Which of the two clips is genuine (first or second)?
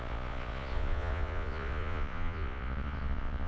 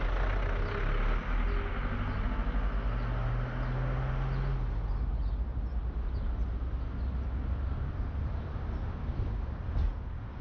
second